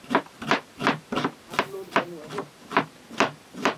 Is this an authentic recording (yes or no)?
no